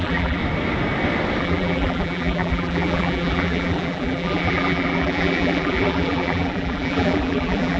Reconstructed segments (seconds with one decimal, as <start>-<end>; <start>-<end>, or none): 0.0-0.4; 1.4-7.8